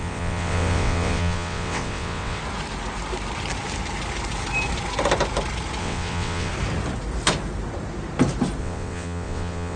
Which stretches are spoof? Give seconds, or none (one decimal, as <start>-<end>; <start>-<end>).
0.0-2.4; 5.8-6.5; 8.6-9.8